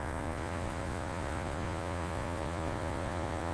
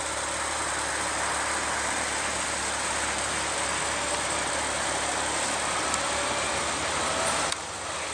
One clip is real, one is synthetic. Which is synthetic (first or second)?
first